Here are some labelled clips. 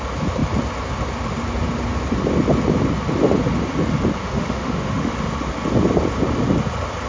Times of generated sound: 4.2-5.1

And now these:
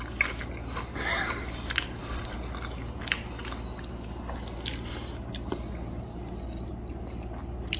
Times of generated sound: none

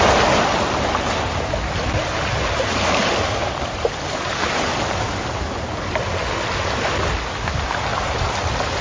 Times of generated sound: 4.1-5.9; 7.9-8.4

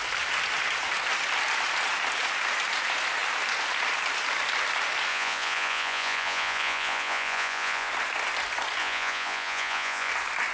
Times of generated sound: 5.1-7.9; 8.8-10.1

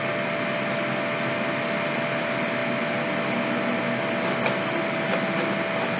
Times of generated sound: none

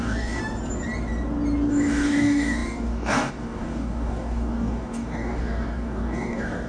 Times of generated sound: 0.0-0.4; 1.7-6.7

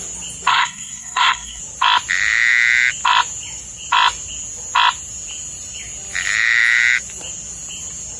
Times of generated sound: 0.5-1.6